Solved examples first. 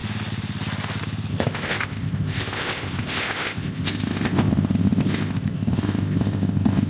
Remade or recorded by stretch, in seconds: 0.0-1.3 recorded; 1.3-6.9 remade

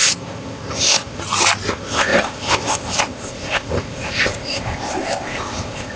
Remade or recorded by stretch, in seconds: 0.0-1.2 remade; 1.2-1.7 recorded; 1.7-6.0 remade

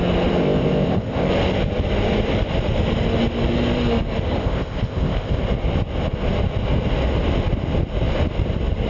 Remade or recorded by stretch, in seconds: 0.0-0.4 recorded; 0.4-1.3 remade; 1.3-4.4 recorded; 4.4-5.4 remade; 5.4-8.9 recorded

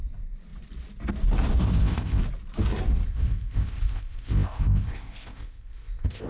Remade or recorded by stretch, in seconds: 0.0-1.6 recorded; 1.6-2.2 remade; 2.2-3.1 recorded; 3.1-6.3 remade